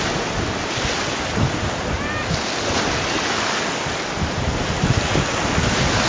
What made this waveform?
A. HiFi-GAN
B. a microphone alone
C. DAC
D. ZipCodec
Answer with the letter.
B